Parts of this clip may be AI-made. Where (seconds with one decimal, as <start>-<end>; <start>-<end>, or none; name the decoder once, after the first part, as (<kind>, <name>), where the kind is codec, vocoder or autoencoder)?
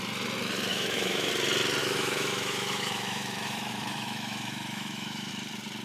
0.7-1.3 (autoencoder, DAC-VAE); 1.8-5.3